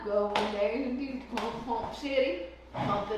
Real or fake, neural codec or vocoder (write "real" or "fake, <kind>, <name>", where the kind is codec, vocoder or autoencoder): real